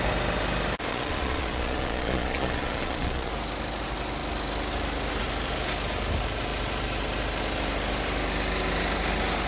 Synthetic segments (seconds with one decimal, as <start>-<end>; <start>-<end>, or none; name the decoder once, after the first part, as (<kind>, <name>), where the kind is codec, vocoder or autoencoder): 0.9-3.3 (vocoder, Vocos)